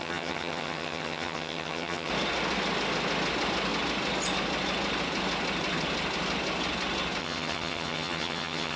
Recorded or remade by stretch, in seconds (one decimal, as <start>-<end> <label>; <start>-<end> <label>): 0.0-2.1 remade; 2.1-7.2 recorded; 7.2-8.8 remade